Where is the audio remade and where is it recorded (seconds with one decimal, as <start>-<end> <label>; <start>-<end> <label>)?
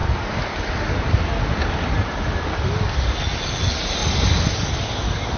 0.0-5.4 recorded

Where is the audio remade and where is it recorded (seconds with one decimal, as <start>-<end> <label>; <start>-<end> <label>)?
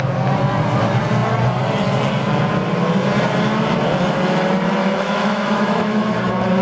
0.0-4.8 recorded; 4.8-6.1 remade; 6.1-6.6 recorded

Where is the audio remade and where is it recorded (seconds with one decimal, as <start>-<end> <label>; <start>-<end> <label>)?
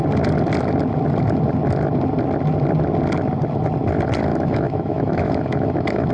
0.0-4.3 recorded; 4.3-6.1 remade